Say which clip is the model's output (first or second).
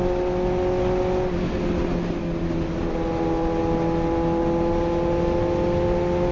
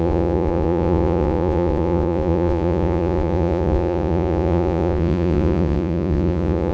second